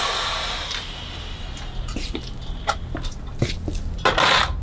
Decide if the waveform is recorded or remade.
recorded